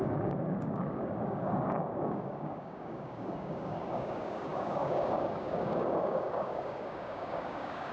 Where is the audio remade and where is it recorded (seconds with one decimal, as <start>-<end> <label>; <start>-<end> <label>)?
0.0-7.9 remade